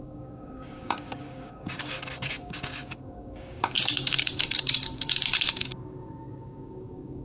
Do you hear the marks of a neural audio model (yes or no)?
yes